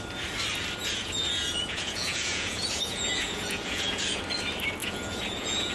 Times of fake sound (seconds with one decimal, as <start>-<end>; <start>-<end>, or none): 0.8-4.2; 4.8-5.7